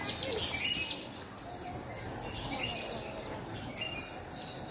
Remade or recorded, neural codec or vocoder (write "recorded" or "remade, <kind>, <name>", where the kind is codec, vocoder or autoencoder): recorded